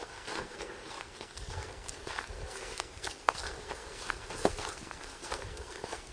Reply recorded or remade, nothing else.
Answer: remade